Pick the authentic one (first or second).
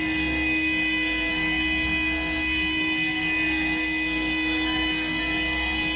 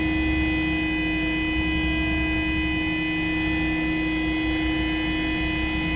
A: second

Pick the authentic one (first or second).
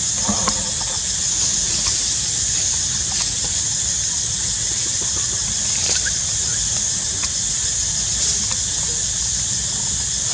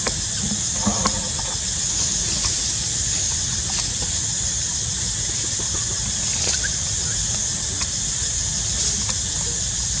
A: second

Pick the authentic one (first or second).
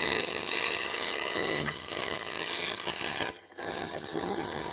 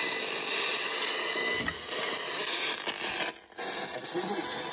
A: second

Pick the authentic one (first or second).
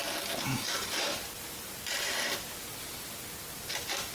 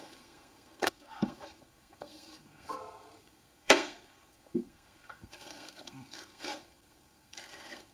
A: first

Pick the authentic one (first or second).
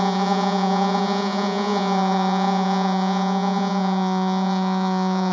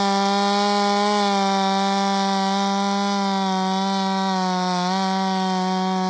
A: second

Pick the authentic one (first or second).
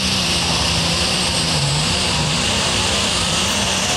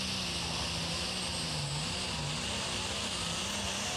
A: second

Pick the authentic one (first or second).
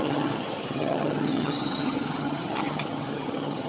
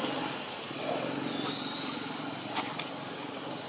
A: second